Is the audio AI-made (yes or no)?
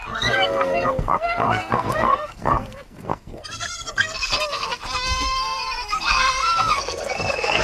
yes